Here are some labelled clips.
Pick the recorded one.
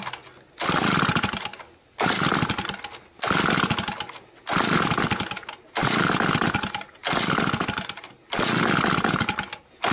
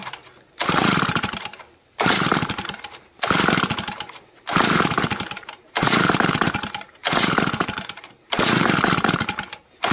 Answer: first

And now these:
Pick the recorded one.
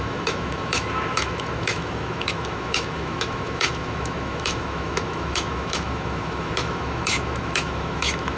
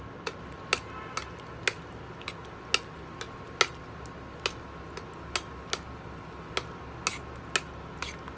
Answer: second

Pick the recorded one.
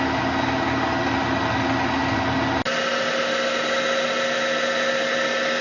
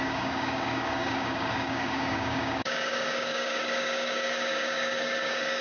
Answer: first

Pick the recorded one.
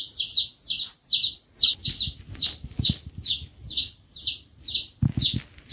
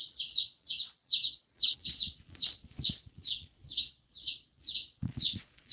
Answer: first